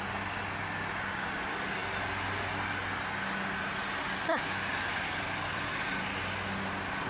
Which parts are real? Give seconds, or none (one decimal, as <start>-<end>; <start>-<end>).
0.0-7.1